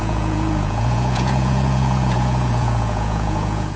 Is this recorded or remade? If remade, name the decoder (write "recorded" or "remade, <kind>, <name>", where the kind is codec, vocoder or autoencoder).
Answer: remade, vocoder, Vocos